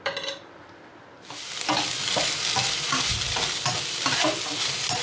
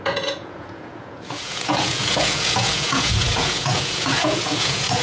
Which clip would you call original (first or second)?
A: first